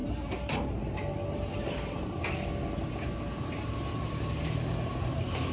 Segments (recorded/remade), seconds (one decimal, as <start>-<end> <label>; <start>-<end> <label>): 0.0-5.5 recorded